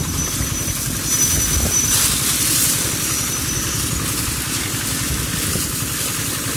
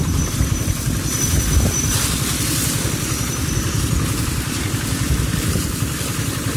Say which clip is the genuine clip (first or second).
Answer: first